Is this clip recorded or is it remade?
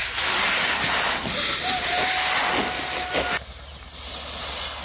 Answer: recorded